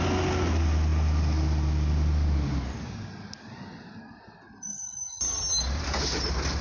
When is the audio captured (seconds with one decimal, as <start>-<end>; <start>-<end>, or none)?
0.0-6.6

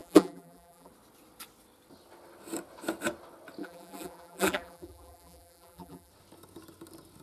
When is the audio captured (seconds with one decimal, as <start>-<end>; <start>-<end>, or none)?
0.9-3.6; 6.1-7.2

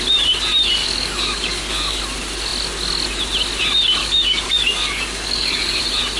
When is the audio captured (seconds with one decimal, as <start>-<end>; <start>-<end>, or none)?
0.0-0.8; 2.0-4.0; 5.8-6.2

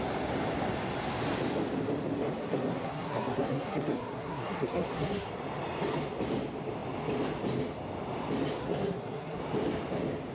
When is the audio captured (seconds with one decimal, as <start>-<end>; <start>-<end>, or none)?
0.0-2.4; 5.3-8.6; 9.4-10.3

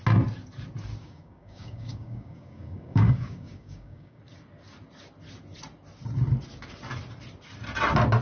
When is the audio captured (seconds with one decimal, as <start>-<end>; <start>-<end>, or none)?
0.0-1.0; 4.2-8.2

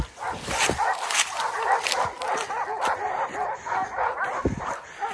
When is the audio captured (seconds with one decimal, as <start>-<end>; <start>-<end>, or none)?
0.0-5.1

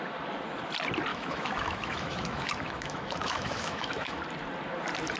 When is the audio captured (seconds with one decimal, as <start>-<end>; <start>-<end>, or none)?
0.0-1.1; 4.2-5.2

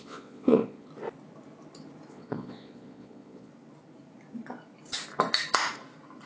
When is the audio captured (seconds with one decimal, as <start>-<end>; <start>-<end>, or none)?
0.9-2.1; 3.5-6.3